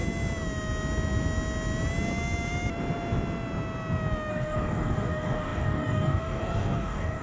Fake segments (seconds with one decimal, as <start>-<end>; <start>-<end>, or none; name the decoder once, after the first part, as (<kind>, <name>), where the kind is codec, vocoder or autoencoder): 4.3-7.2 (codec, DAC)